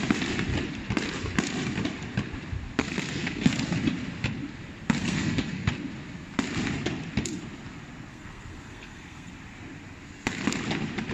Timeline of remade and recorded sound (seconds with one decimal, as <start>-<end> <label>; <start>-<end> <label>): 0.0-2.8 recorded; 2.8-3.5 remade; 3.5-5.0 recorded; 5.0-5.7 remade; 5.7-8.1 recorded; 8.1-9.3 remade; 9.3-11.1 recorded